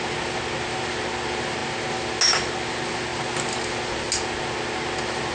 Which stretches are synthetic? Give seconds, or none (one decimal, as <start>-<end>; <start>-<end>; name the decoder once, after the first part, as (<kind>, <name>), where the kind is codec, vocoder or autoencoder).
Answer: none